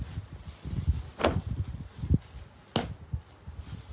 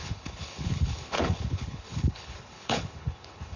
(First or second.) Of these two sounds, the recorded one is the first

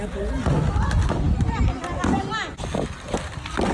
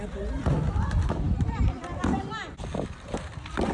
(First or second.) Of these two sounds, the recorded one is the first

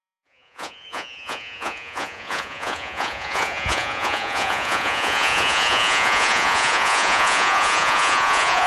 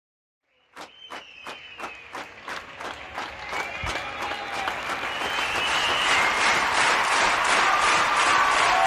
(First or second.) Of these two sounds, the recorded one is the second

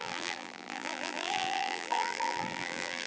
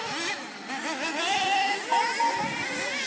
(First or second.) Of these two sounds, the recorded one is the second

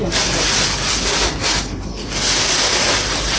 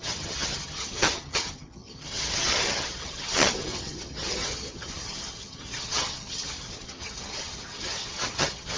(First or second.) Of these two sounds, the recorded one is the first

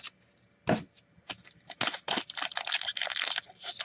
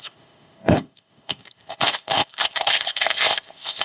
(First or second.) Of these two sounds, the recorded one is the first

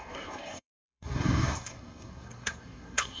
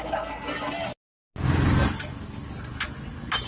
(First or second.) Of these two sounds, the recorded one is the second